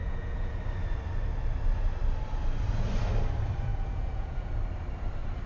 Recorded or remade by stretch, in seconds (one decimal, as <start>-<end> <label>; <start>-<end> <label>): 0.0-0.6 remade; 0.6-3.7 recorded; 3.7-4.5 remade; 4.5-5.5 recorded